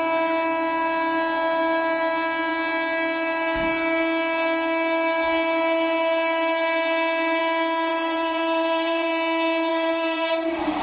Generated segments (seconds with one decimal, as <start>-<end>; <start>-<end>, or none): 7.9-9.1; 9.7-10.8